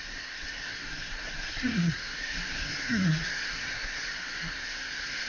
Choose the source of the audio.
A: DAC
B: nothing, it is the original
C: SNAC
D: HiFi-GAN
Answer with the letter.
C